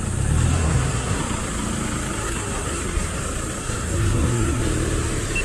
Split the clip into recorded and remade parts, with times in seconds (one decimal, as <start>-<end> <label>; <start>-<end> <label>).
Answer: 0.0-0.5 recorded; 0.5-1.2 remade; 1.2-2.2 recorded; 2.2-3.2 remade; 3.2-3.6 recorded; 3.6-4.6 remade; 4.6-5.4 recorded